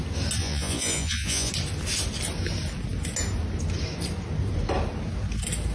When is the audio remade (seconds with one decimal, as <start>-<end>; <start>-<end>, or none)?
0.4-1.5